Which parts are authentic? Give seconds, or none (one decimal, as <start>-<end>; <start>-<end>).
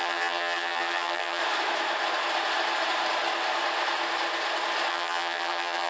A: 1.4-4.9